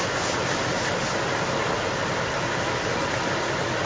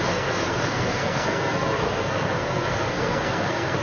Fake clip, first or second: second